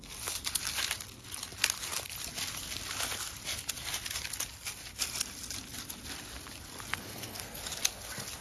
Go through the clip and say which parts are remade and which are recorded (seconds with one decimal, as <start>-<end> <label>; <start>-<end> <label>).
0.0-6.9 recorded; 6.9-7.6 remade; 7.6-8.4 recorded